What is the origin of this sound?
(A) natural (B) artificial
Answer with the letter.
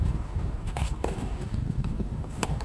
B